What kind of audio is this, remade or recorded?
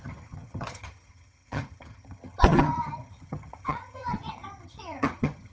remade